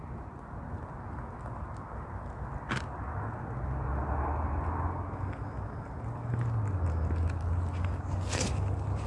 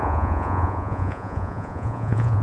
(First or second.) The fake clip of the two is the second